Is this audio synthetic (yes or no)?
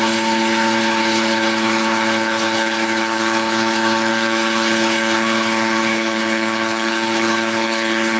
yes